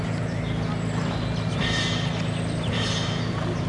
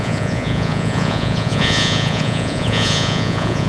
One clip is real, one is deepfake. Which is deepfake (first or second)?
second